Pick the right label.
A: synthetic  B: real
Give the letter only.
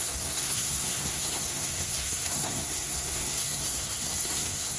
A